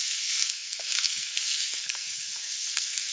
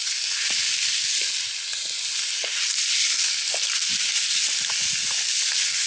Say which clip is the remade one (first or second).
first